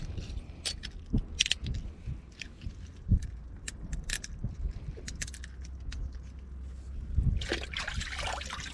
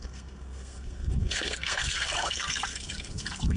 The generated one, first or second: second